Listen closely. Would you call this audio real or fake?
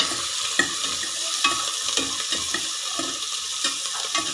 real